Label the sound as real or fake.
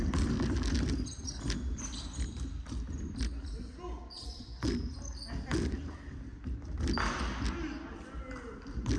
real